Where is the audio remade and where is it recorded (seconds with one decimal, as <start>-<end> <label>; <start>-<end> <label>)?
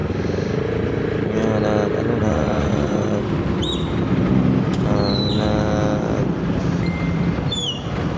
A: 0.0-2.2 recorded; 2.2-3.2 remade; 3.2-8.2 recorded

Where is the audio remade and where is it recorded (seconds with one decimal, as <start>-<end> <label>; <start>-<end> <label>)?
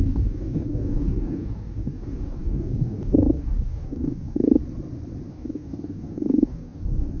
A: 0.0-4.6 remade; 4.6-5.3 recorded; 5.3-7.2 remade